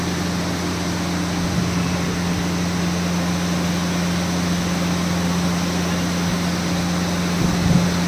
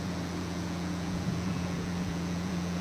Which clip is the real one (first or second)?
first